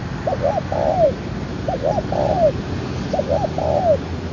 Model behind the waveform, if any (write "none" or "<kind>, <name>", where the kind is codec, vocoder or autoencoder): none